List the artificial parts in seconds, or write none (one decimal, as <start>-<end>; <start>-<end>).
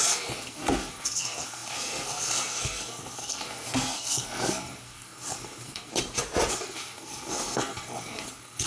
0.0-5.9; 6.5-8.7